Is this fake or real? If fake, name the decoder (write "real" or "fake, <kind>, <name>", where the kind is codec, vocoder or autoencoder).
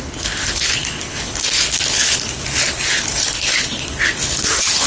fake, codec, HILCodec